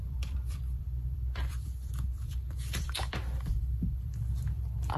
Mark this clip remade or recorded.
remade